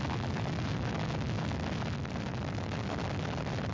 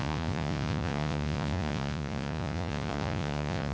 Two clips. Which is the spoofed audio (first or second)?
second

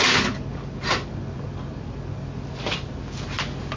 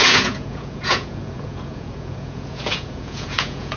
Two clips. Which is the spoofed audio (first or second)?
second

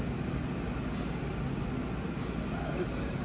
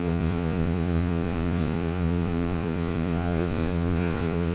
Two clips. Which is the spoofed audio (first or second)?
second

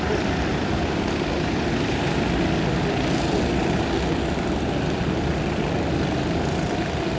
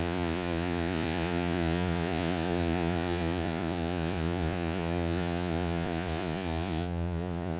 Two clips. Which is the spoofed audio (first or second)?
second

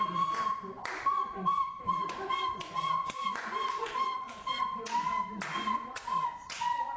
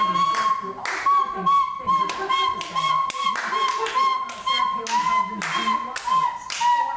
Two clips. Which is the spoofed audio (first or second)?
first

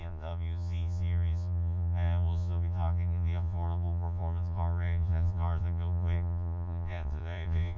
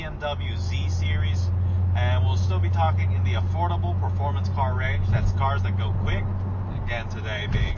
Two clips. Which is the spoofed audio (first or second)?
first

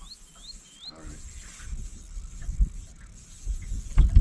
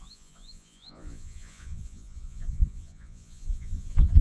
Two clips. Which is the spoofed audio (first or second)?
second